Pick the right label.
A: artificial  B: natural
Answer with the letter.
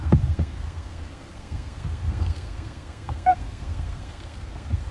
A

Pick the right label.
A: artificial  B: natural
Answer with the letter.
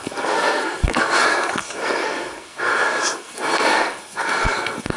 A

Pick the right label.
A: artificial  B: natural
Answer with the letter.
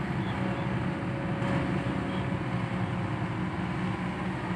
B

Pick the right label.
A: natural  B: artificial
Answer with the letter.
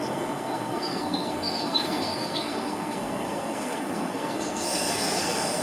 B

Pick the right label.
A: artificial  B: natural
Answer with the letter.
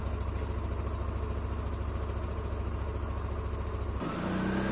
B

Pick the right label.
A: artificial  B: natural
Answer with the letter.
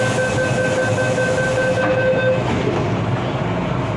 B